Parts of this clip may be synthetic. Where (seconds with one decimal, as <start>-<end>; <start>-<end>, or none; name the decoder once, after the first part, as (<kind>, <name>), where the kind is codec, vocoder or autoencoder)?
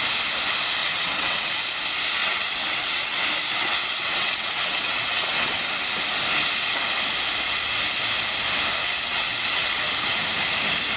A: 0.8-1.5 (vocoder, WaveNeXt); 2.2-3.2; 3.6-5.7; 8.8-9.8